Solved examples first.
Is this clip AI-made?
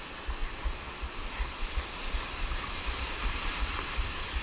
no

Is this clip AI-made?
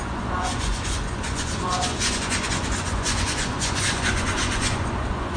yes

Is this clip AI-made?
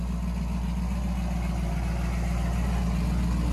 no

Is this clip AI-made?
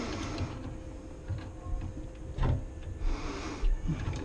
no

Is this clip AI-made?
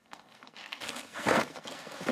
yes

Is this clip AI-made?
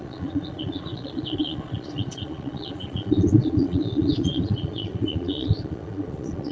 yes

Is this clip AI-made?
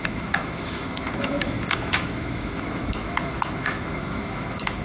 yes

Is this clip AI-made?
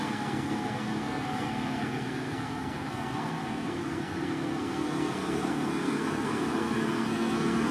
yes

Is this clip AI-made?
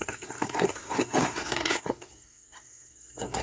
yes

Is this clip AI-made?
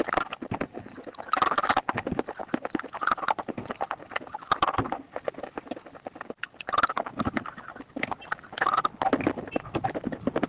no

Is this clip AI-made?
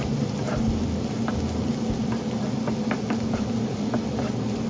no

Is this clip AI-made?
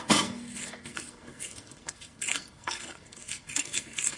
yes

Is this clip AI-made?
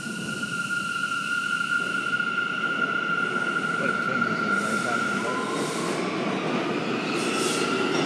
no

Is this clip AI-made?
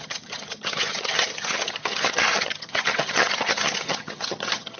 yes